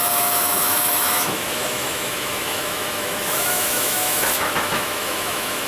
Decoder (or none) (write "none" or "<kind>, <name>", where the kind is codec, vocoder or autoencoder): autoencoder, DAC-VAE